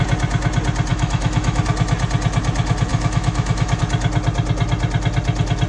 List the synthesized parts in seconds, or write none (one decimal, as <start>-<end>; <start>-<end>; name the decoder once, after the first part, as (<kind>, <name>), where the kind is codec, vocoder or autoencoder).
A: 0.9-1.6 (autoencoder, DAC-VAE); 2.9-3.8